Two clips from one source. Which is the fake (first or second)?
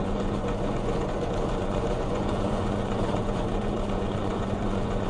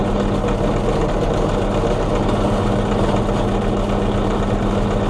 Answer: first